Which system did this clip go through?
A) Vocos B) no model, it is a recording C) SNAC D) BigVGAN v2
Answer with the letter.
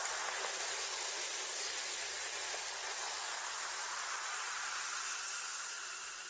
B